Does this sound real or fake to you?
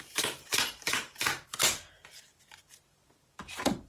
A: fake